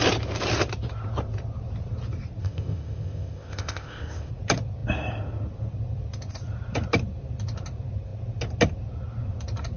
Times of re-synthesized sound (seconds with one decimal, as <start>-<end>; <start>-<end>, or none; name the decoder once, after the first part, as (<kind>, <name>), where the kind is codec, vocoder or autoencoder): 2.4-4.3 (codec, ZipCodec)